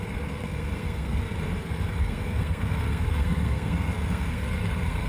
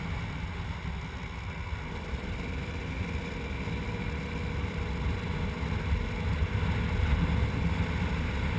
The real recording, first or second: second